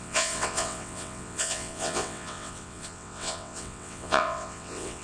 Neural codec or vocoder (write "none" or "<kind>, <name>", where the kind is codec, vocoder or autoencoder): vocoder, WaveNeXt